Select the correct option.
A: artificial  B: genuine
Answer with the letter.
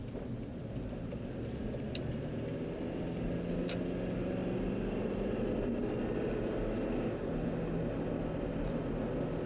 B